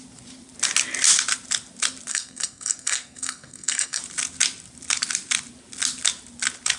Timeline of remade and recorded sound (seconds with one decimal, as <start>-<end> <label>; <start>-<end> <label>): 0.0-2.1 recorded; 2.1-4.0 remade; 4.0-6.8 recorded